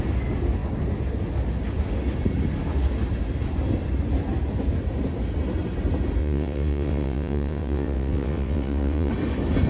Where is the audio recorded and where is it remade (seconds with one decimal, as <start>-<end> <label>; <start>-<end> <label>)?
0.0-6.2 recorded; 6.2-9.1 remade; 9.1-9.7 recorded